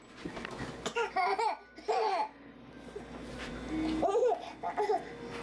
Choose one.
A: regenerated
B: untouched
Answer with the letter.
B